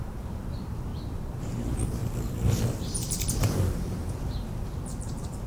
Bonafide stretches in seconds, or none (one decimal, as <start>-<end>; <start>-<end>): none